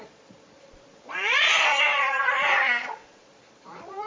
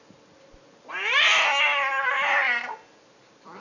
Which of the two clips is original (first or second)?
second